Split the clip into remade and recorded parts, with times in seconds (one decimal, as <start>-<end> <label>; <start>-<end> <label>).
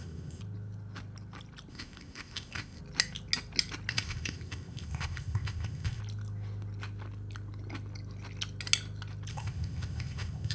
0.0-0.4 remade; 0.4-1.7 recorded; 1.7-2.8 remade; 2.8-3.9 recorded; 3.9-6.0 remade; 6.0-9.3 recorded; 9.3-10.5 remade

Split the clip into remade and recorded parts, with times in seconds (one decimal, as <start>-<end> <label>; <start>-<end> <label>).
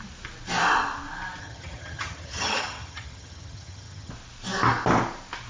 0.0-1.4 recorded; 1.4-4.1 remade; 4.1-5.5 recorded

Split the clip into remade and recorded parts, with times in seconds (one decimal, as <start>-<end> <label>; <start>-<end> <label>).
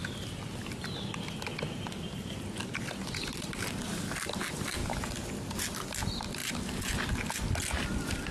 0.0-8.3 recorded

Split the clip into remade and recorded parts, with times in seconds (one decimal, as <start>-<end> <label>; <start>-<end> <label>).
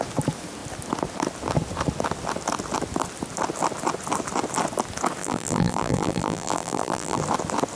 0.0-5.2 recorded; 5.2-7.2 remade; 7.2-7.8 recorded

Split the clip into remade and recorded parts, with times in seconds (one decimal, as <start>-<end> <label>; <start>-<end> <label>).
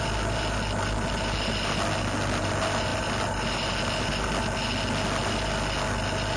0.0-6.4 recorded